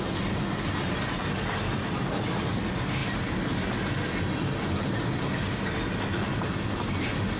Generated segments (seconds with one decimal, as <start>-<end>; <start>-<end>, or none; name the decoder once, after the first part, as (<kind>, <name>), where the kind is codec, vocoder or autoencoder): none

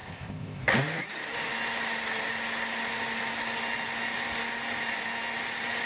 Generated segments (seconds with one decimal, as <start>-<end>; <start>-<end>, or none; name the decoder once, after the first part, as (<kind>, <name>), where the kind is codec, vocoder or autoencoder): 0.0-0.6 (codec, ZipCodec)